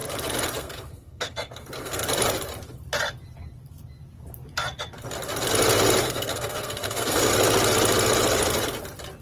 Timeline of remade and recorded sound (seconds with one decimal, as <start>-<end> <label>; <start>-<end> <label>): 0.0-0.6 recorded; 0.6-2.0 remade; 2.0-6.0 recorded; 6.0-7.3 remade; 7.3-9.2 recorded